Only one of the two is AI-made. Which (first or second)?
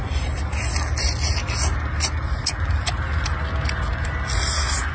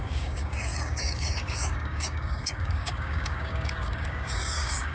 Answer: second